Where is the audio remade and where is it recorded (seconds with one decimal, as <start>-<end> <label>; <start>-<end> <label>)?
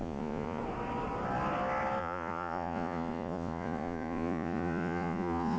0.0-0.6 remade; 0.6-2.0 recorded; 2.0-5.6 remade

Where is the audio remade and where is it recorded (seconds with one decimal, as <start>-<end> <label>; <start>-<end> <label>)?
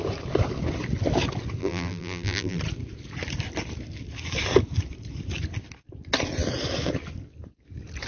0.0-1.6 recorded; 1.6-2.6 remade; 2.6-8.1 recorded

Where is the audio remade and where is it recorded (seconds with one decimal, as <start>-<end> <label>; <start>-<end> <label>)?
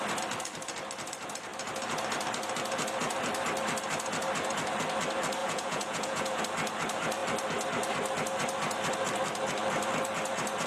0.0-5.4 recorded; 5.4-6.4 remade; 6.4-10.7 recorded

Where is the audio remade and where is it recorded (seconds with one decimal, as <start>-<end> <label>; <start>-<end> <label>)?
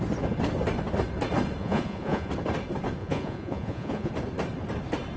0.0-1.6 recorded; 1.6-2.3 remade; 2.3-3.0 recorded; 3.0-4.1 remade; 4.1-5.2 recorded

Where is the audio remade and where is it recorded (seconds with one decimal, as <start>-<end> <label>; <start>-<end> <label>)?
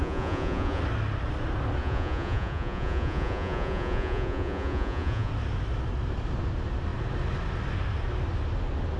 0.0-0.8 remade; 0.8-1.8 recorded; 1.8-5.3 remade; 5.3-9.0 recorded